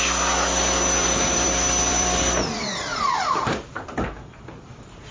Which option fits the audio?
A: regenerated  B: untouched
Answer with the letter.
A